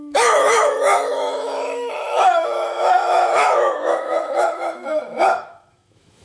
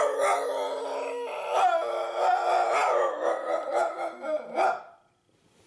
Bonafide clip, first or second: second